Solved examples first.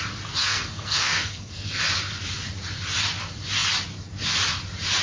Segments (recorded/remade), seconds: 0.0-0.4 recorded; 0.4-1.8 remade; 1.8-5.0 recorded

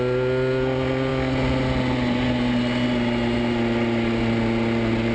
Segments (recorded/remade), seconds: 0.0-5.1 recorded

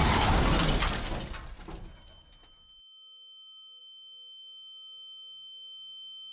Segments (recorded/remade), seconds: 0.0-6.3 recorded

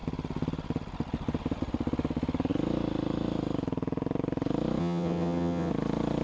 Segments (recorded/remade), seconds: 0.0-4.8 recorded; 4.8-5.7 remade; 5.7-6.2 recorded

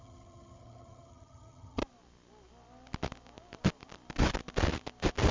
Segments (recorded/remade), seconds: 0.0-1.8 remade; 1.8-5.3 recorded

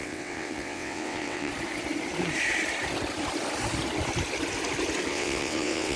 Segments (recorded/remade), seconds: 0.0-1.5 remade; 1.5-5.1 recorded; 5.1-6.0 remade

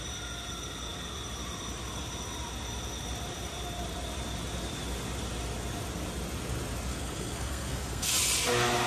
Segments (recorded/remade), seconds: 0.0-6.9 recorded; 6.9-8.1 remade; 8.1-8.9 recorded